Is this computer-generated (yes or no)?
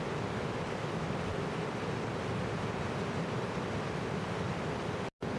no